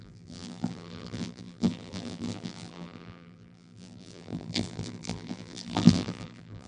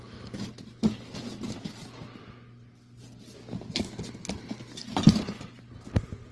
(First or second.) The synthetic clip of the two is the first